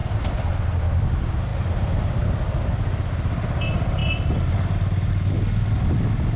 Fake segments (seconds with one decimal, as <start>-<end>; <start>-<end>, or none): none